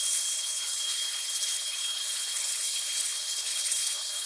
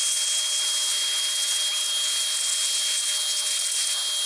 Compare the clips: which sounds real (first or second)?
second